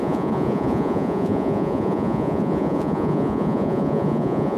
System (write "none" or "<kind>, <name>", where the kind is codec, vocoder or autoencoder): vocoder, Vocos